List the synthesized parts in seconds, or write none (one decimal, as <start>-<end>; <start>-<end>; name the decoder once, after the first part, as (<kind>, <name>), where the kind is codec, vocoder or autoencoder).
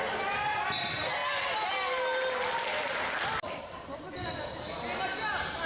none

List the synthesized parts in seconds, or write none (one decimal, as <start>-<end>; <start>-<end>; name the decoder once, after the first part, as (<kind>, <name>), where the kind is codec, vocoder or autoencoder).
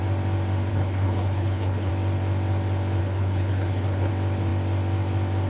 0.7-1.9 (codec, HILCodec); 3.0-4.1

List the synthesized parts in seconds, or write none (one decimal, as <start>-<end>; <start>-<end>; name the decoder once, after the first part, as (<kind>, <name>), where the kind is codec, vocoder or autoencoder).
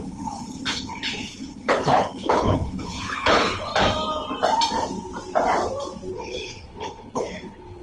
0.0-3.7 (codec, HILCodec); 6.1-7.8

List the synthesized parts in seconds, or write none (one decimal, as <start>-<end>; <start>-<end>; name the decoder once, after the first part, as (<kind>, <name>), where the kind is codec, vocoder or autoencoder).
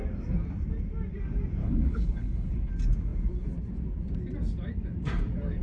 1.6-2.7 (codec, HILCodec)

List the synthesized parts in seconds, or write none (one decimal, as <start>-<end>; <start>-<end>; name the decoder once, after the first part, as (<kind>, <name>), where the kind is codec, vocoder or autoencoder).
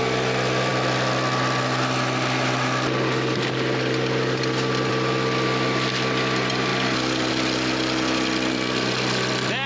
none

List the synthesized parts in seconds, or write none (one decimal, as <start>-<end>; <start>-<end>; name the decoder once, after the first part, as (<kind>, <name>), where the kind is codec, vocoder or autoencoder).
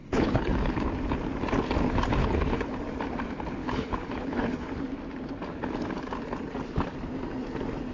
0.0-0.9 (codec, HILCodec); 2.2-2.8; 3.6-4.7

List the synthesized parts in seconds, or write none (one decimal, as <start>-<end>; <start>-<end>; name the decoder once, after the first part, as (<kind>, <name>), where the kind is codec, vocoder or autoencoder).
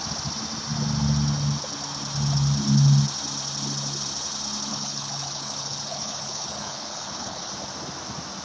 4.7-7.5 (codec, HILCodec)